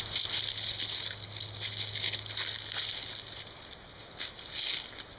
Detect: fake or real real